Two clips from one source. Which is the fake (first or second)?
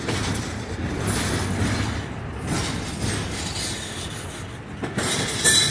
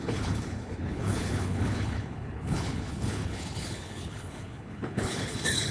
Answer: second